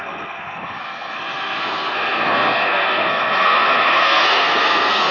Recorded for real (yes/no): no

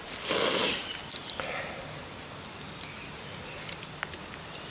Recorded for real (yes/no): yes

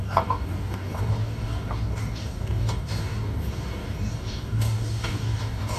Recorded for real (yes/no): no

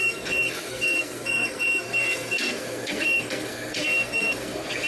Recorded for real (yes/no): no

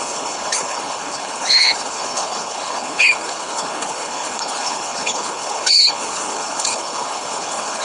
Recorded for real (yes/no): no